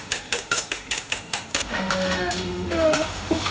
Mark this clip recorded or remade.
remade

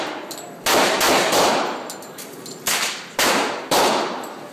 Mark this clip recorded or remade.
recorded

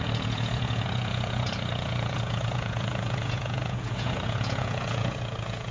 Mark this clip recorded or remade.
remade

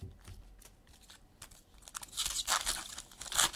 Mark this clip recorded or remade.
recorded